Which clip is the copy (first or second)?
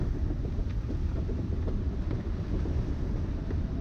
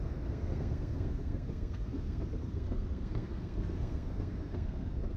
second